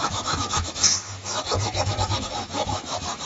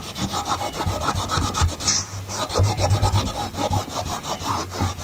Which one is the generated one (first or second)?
first